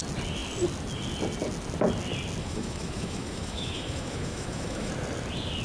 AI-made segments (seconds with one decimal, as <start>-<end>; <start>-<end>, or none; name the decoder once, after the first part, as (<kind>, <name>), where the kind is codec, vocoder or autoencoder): 2.4-4.9 (autoencoder, DAC-VAE)